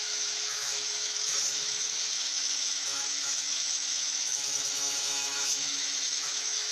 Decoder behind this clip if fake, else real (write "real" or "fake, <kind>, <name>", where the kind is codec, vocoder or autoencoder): fake, autoencoder, DAC-VAE